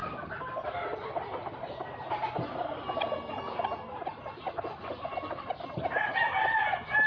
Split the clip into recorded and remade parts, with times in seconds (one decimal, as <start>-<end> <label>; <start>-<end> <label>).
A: 0.0-7.1 recorded